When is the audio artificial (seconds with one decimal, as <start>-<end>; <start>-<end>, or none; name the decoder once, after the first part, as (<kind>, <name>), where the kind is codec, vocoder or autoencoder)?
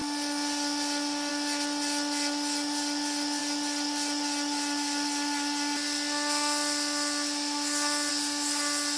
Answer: none